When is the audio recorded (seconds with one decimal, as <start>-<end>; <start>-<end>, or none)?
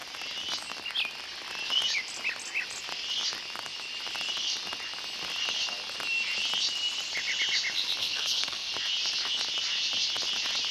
0.0-8.0; 8.7-10.7